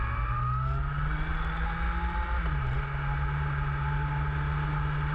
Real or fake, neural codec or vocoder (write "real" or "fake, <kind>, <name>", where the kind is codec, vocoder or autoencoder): real